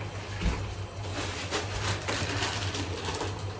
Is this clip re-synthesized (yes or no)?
no